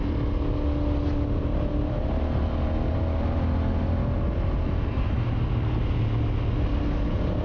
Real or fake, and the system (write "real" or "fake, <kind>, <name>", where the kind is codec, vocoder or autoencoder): real